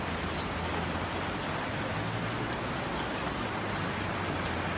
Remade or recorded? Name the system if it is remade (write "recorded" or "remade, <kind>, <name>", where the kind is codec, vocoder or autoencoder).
recorded